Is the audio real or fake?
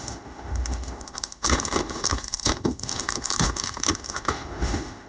fake